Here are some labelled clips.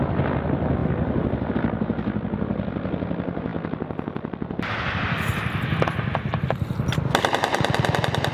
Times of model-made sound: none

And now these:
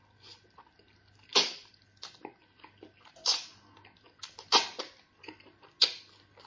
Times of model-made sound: none